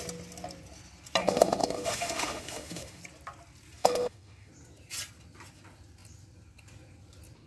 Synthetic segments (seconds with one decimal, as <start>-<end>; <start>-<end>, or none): 1.2-3.0; 3.8-4.5